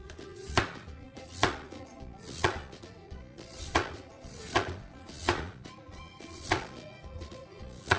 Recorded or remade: remade